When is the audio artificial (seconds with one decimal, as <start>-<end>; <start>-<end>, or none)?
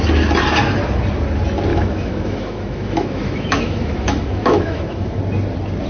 1.7-5.2